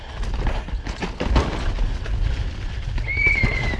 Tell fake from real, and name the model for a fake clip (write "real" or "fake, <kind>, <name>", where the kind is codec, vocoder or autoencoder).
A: real